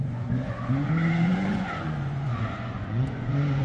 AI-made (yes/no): yes